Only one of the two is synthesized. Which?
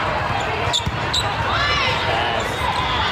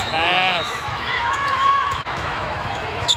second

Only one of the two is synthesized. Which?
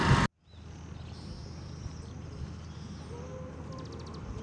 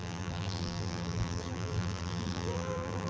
second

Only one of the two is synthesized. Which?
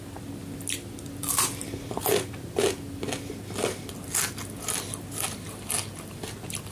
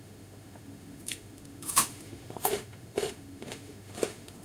second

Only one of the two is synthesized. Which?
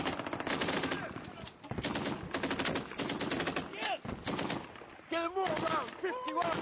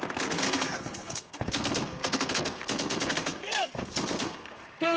second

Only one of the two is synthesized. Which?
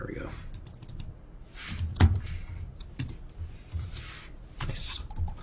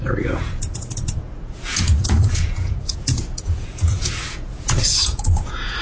second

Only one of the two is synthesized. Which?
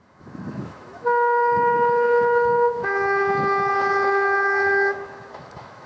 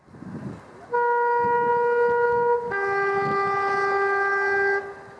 first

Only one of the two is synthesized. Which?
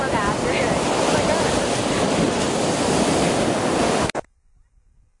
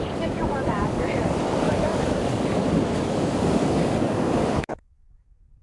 second